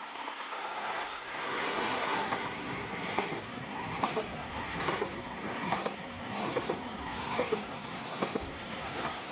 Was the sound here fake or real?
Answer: fake